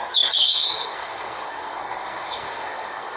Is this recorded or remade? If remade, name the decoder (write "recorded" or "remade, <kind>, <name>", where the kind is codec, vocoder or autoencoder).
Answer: remade, codec, SNAC